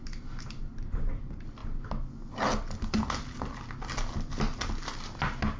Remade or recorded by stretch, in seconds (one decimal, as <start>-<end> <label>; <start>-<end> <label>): 0.0-5.6 recorded

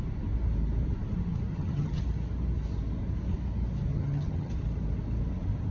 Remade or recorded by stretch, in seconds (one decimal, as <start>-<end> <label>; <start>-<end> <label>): 0.0-1.5 recorded; 1.5-2.0 remade; 2.0-3.9 recorded; 3.9-4.5 remade; 4.5-5.7 recorded

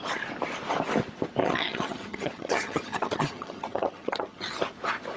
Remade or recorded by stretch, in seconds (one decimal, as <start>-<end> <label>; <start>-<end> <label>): 0.0-1.4 recorded; 1.4-4.5 remade; 4.5-5.2 recorded

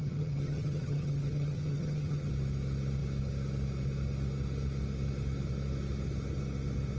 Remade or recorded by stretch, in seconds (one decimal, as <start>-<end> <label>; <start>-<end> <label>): 0.0-2.3 remade; 2.3-7.0 recorded

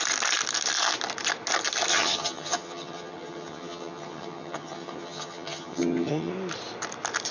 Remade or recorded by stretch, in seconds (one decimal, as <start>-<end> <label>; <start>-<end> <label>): 0.0-1.9 recorded; 1.9-6.3 remade; 6.3-7.3 recorded

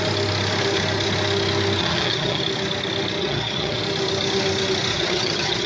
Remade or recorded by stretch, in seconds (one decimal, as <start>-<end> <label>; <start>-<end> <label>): 0.0-1.8 recorded; 1.8-2.4 remade; 2.4-3.2 recorded; 3.2-3.8 remade; 3.8-4.9 recorded; 4.9-5.7 remade